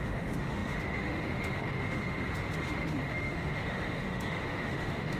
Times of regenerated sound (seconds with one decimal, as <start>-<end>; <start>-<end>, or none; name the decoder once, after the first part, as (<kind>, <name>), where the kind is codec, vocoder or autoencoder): 0.0-5.2 (autoencoder, DAC-VAE)